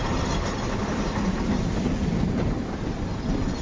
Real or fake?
real